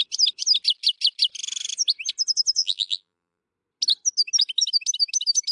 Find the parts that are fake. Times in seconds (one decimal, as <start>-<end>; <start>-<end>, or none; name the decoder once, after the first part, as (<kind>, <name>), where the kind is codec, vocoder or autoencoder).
2.6-3.4 (vocoder, BigVGAN v2)